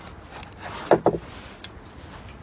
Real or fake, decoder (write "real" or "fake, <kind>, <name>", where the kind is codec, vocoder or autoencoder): real